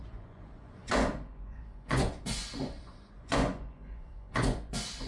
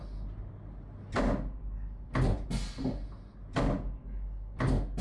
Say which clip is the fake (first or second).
first